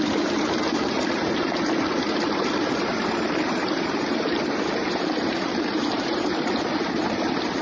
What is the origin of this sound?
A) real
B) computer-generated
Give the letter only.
B